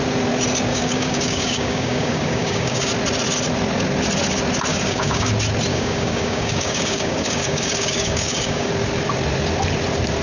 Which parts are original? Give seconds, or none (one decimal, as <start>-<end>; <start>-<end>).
0.0-0.7; 2.9-4.7; 5.3-5.7; 8.7-10.2